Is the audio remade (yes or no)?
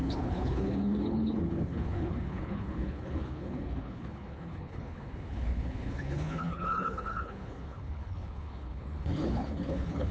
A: yes